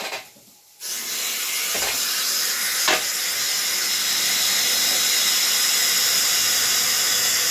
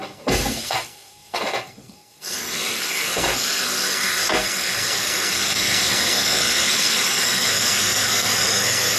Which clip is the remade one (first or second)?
second